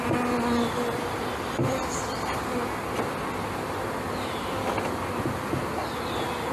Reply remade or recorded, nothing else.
recorded